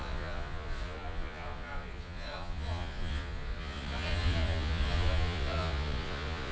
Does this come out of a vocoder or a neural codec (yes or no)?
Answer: yes